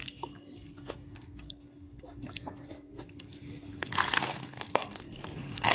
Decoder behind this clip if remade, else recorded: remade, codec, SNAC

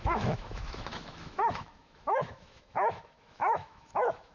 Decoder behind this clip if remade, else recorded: remade, autoencoder, DAC-VAE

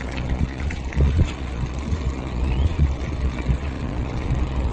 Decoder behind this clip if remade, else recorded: remade, vocoder, Vocos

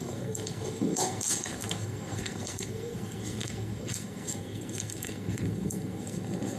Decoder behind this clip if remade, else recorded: remade, codec, SNAC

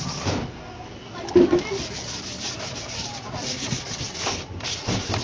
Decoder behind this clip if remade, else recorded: recorded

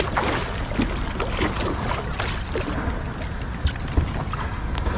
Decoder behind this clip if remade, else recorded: recorded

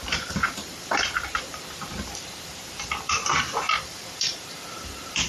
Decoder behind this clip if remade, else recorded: remade, vocoder, BigVGAN v2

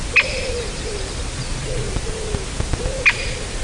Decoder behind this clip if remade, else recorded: recorded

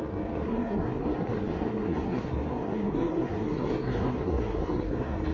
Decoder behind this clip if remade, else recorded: remade, codec, SNAC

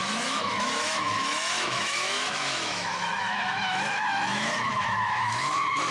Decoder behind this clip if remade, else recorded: remade, autoencoder, DAC-VAE